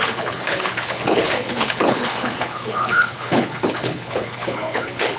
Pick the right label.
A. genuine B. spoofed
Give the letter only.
B